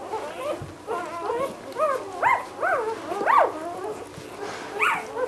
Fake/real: real